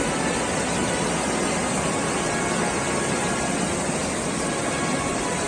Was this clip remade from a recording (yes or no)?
no